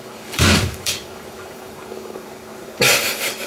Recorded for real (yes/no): no